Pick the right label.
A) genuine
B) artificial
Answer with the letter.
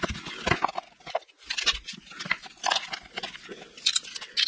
A